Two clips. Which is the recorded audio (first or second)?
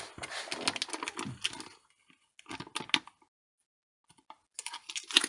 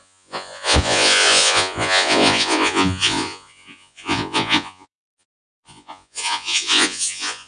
first